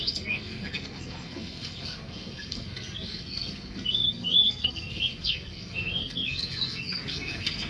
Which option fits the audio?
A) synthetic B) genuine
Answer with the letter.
A